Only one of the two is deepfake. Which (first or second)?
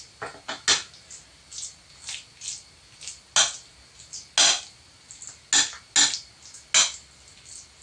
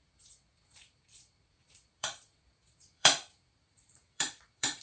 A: second